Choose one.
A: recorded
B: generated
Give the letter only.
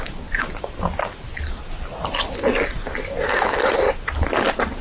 A